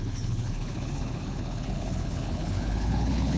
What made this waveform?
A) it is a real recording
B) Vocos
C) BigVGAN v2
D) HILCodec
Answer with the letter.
D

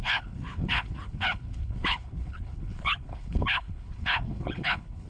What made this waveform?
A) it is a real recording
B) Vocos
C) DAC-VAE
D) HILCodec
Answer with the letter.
D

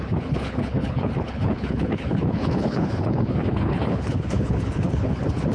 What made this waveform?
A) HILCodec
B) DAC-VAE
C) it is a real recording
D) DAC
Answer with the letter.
A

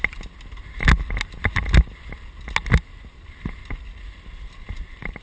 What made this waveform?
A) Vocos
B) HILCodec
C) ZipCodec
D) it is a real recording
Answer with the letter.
D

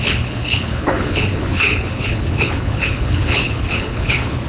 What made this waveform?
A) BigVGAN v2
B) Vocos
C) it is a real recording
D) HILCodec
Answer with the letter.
D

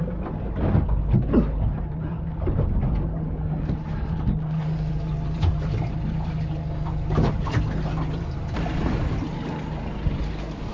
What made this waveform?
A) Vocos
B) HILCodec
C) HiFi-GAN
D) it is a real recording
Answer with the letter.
D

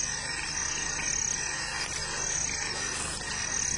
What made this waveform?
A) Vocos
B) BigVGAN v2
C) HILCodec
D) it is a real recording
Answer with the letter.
D